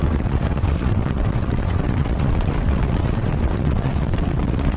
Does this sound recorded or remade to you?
remade